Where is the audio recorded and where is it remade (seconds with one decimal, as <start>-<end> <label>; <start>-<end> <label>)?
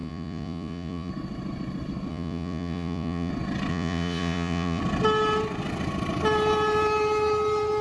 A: 0.0-1.1 remade; 1.1-2.1 recorded; 2.1-3.3 remade; 3.3-3.7 recorded; 3.7-4.8 remade; 4.8-7.8 recorded